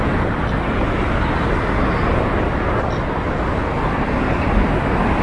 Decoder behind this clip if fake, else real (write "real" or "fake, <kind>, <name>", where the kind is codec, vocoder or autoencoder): real